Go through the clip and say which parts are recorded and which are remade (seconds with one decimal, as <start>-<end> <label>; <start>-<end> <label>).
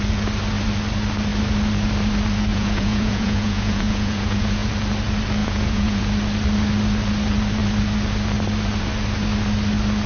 0.0-2.5 recorded; 2.5-4.7 remade; 4.7-5.4 recorded; 5.4-6.0 remade; 6.0-10.1 recorded